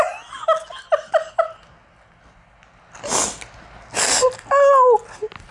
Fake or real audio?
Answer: real